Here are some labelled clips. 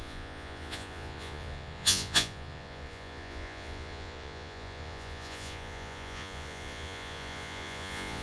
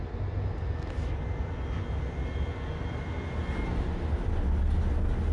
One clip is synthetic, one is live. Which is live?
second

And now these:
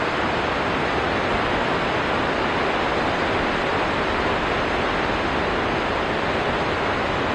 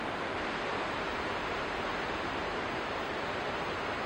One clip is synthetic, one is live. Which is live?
first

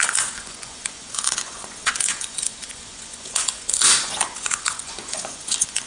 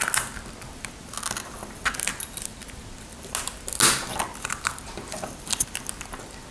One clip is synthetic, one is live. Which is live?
second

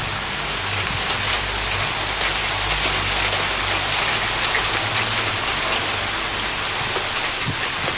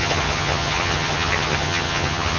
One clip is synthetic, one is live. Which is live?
first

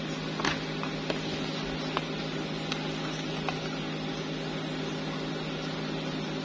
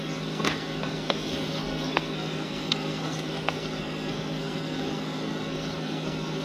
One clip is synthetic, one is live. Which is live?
first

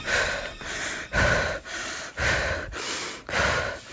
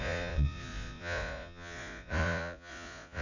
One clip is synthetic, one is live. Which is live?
first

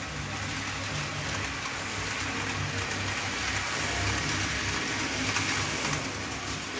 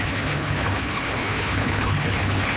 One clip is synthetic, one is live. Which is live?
first